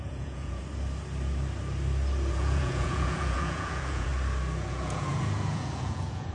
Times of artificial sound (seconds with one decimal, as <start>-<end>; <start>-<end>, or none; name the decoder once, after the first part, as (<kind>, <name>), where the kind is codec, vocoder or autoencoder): 0.0-0.6 (vocoder, Vocos); 2.3-4.1; 4.7-6.3